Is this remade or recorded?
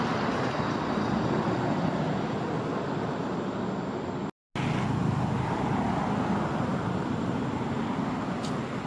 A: recorded